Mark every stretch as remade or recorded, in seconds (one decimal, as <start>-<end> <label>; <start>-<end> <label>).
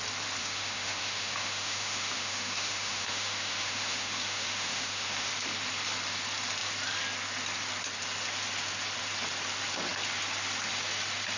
0.0-0.4 recorded; 0.4-5.3 remade; 5.3-11.4 recorded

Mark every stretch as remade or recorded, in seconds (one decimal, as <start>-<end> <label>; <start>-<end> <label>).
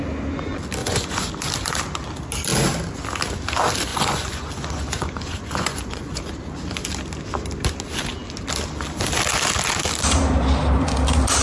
0.0-0.8 recorded; 0.8-1.3 remade; 1.3-3.9 recorded; 3.9-6.2 remade; 6.2-11.4 recorded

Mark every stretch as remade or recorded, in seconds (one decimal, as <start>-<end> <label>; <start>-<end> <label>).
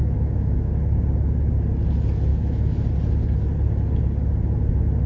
0.0-0.7 remade; 0.7-2.3 recorded; 2.3-2.8 remade; 2.8-5.1 recorded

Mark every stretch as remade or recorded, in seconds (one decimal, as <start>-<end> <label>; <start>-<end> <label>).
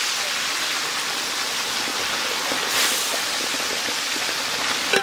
0.0-5.0 recorded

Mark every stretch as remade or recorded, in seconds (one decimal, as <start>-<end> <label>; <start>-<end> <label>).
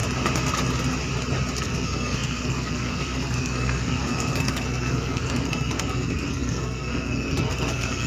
0.0-1.6 recorded; 1.6-8.1 remade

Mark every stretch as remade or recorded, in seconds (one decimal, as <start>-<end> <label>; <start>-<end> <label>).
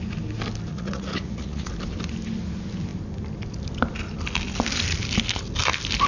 0.0-0.7 recorded; 0.7-1.7 remade; 1.7-6.1 recorded